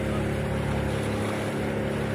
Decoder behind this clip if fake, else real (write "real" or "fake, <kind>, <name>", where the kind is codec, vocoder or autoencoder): real